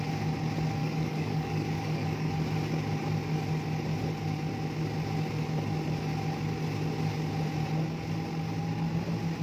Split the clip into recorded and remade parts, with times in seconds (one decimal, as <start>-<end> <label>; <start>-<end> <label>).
0.0-0.8 recorded; 0.8-2.3 remade; 2.3-9.4 recorded